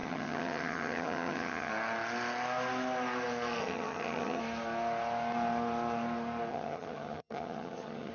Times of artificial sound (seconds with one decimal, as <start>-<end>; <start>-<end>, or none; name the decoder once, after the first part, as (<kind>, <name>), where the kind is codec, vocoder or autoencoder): 0.0-1.7 (vocoder, HiFi-GAN); 3.6-4.4; 6.5-8.1